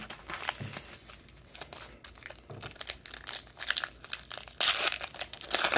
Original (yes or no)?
yes